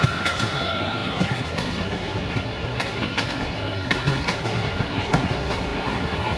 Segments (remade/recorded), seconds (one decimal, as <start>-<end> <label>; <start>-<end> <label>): 0.0-6.4 remade